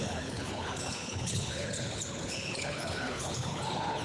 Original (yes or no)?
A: no